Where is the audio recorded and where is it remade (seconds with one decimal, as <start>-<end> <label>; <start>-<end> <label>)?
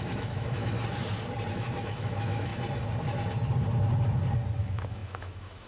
0.0-0.6 remade; 0.6-1.5 recorded; 1.5-2.5 remade; 2.5-4.6 recorded; 4.6-5.7 remade